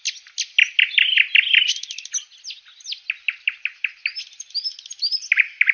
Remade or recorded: recorded